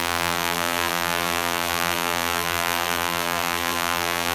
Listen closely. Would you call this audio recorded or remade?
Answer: remade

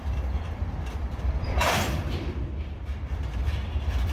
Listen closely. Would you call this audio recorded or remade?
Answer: remade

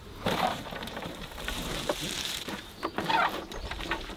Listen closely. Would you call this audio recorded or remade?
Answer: remade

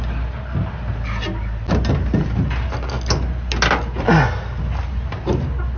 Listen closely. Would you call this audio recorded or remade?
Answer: recorded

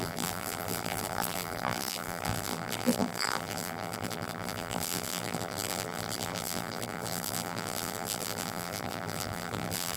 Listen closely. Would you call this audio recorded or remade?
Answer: remade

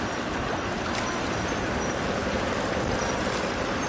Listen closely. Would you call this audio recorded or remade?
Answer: recorded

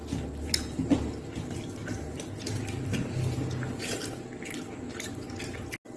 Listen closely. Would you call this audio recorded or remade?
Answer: recorded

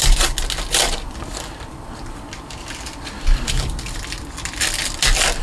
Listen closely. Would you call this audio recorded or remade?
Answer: recorded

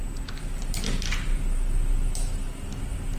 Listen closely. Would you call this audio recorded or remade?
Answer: recorded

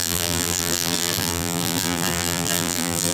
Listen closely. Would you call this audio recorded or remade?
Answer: remade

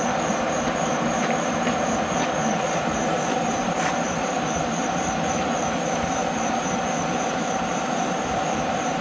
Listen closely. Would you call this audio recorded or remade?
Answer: remade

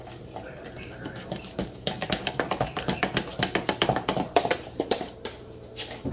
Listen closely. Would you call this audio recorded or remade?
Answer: remade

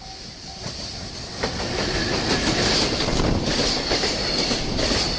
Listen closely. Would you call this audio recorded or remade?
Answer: remade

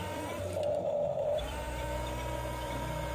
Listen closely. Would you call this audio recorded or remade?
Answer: remade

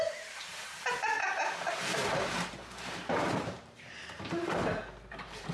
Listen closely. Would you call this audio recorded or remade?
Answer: remade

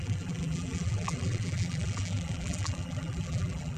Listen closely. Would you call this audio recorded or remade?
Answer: remade